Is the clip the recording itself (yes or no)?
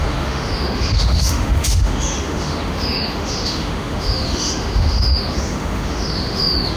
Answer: no